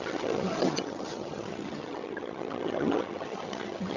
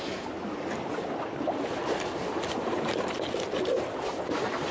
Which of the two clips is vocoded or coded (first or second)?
first